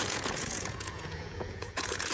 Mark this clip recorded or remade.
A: remade